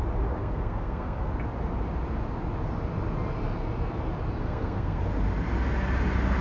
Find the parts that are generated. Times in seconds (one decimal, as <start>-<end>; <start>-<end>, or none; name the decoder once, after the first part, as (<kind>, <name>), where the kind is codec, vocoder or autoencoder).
0.4-1.3 (codec, SNAC); 4.4-5.0